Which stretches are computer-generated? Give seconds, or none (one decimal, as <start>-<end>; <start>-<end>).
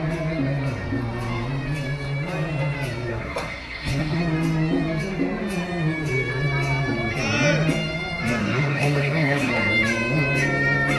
3.1-4.2; 8.4-9.5